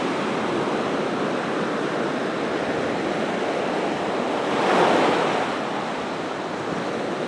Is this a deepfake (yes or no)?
no